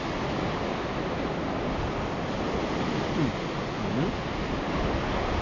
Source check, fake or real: real